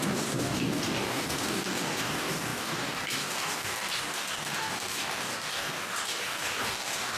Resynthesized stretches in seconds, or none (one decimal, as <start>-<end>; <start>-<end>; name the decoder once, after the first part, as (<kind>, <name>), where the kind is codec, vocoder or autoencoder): 0.0-7.2 (codec, DAC)